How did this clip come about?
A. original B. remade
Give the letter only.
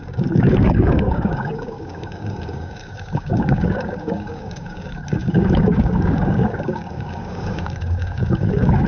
B